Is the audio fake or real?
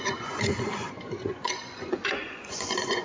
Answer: fake